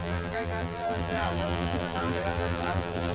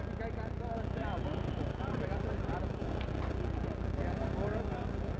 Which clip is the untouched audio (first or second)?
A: second